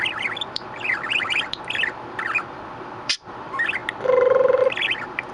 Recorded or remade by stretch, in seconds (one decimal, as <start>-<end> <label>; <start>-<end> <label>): 0.0-3.8 remade; 3.8-4.6 recorded; 4.6-5.3 remade